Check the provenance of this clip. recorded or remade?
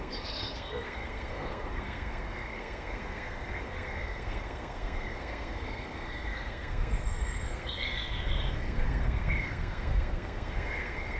remade